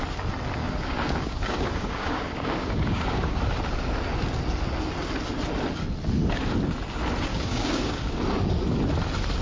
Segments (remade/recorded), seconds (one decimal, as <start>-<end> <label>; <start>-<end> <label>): 0.0-0.6 recorded; 0.6-3.4 remade; 3.4-7.3 recorded; 7.3-8.2 remade; 8.2-9.4 recorded